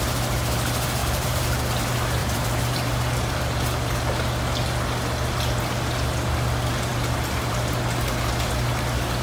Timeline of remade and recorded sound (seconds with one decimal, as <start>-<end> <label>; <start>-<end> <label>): 0.0-1.0 recorded; 1.0-1.6 remade; 1.6-2.2 recorded; 2.2-3.4 remade; 3.4-9.2 recorded